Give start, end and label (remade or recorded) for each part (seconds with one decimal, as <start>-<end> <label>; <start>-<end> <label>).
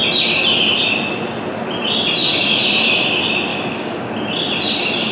0.0-3.5 recorded; 3.5-4.1 remade; 4.1-5.1 recorded